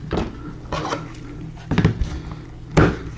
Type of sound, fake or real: real